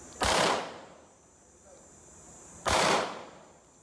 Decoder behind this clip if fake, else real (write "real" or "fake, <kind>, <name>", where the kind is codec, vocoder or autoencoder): fake, vocoder, BigVGAN v2